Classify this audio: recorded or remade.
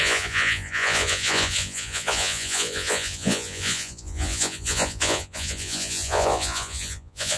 remade